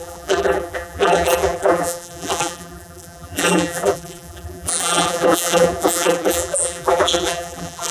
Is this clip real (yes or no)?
no